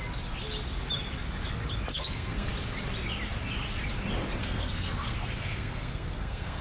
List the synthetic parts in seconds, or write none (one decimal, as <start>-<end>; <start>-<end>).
1.9-2.5; 4.4-6.6